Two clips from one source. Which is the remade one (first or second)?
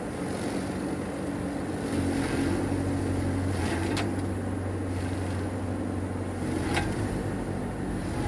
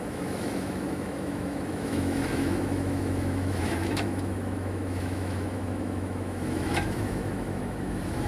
second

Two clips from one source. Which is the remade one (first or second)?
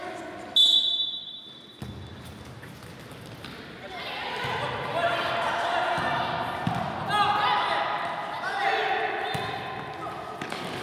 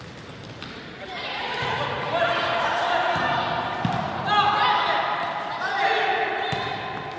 second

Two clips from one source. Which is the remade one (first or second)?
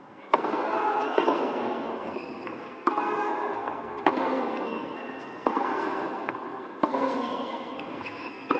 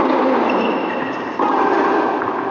first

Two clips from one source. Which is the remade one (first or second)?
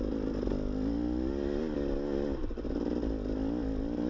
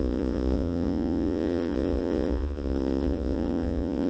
second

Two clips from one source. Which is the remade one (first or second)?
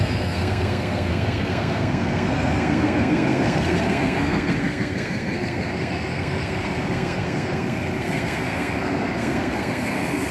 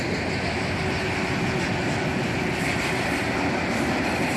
first